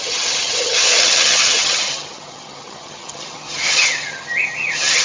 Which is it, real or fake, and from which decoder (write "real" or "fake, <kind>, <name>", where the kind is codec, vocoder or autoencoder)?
fake, vocoder, HiFi-GAN